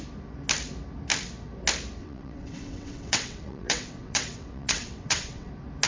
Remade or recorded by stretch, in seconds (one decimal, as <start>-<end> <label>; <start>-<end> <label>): 0.0-2.0 recorded; 2.0-5.5 remade; 5.5-5.9 recorded

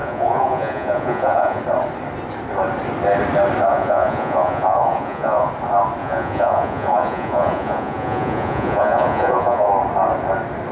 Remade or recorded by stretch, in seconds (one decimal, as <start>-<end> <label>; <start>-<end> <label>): 0.0-1.6 remade; 1.6-3.7 recorded; 3.7-5.5 remade; 5.5-6.0 recorded; 6.0-9.7 remade; 9.7-10.7 recorded